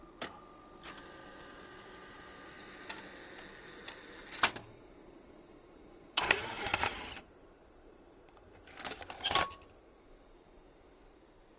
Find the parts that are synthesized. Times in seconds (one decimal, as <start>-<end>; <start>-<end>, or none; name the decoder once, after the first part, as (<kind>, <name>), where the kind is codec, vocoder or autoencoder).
4.7-8.6 (vocoder, Vocos)